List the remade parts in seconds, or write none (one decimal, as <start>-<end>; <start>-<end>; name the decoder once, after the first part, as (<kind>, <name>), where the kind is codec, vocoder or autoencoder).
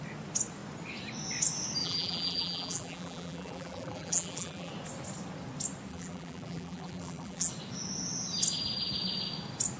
1.8-4.7 (vocoder, BigVGAN v2); 5.9-7.5